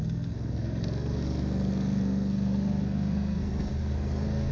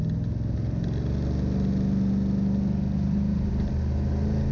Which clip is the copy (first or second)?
first